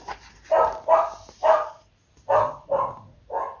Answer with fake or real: real